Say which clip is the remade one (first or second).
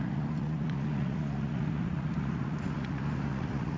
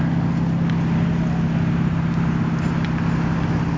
first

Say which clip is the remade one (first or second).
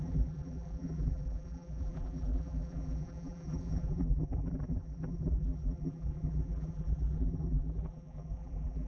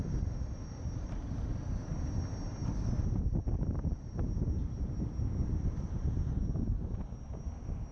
first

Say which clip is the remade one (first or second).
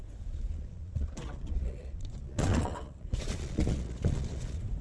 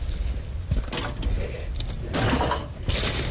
first